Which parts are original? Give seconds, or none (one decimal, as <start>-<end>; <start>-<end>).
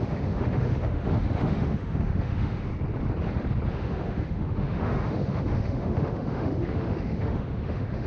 2.7-3.7